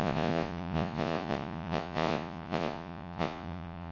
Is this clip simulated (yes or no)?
yes